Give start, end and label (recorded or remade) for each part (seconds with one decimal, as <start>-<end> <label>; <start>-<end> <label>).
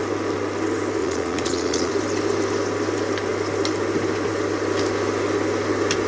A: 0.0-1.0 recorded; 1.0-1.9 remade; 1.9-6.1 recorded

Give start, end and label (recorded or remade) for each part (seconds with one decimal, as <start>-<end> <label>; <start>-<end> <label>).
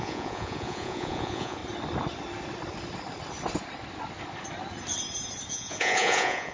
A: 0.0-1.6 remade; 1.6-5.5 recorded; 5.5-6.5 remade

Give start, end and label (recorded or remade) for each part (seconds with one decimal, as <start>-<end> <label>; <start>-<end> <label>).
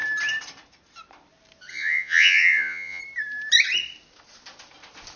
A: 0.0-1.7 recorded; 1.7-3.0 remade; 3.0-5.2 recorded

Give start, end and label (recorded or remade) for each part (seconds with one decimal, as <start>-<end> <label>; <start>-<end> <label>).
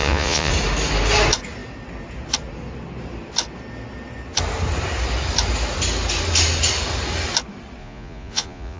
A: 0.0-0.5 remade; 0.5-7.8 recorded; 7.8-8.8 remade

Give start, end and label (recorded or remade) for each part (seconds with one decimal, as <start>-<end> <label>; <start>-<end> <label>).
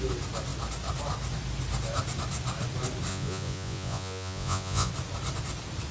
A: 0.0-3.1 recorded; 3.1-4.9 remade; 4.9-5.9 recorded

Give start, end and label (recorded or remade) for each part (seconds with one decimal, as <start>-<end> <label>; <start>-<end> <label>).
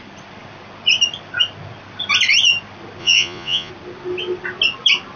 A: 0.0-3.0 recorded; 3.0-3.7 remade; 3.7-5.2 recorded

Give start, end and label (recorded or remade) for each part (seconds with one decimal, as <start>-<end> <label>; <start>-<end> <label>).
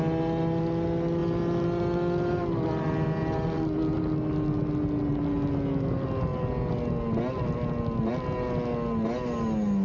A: 0.0-9.8 recorded